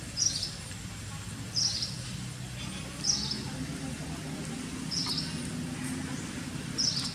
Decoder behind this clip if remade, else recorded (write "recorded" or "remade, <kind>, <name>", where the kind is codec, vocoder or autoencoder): recorded